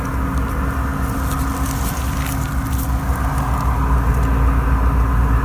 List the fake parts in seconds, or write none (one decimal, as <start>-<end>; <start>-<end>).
none